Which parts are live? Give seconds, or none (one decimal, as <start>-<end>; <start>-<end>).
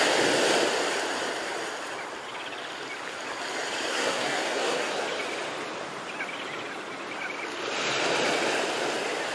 0.0-3.9; 4.9-9.3